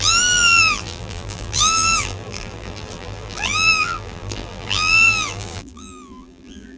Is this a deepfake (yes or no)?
yes